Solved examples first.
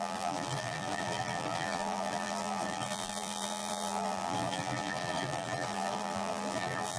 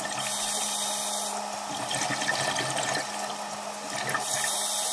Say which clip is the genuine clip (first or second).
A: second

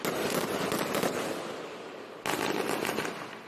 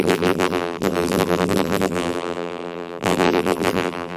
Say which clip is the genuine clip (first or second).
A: first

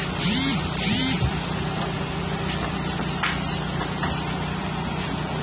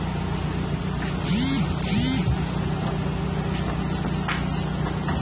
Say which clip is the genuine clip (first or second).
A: second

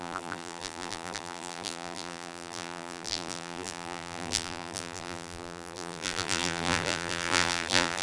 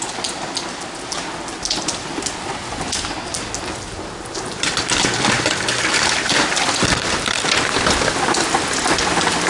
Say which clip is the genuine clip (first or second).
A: second